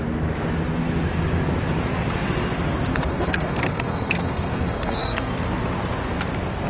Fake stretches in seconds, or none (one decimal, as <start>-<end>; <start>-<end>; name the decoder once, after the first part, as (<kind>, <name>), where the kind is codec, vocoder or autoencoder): 2.9-5.3 (codec, SNAC)